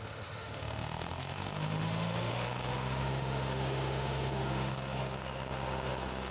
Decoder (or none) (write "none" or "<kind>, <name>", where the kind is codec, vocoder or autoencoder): autoencoder, DAC-VAE